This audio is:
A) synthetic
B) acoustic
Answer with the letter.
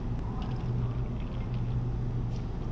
B